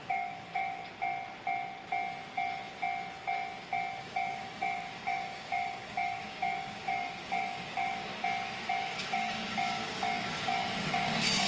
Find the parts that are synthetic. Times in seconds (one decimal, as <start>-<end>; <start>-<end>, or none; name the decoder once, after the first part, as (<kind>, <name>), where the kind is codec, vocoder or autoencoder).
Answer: 0.0-0.8 (codec, DAC); 4.0-8.1; 8.8-11.5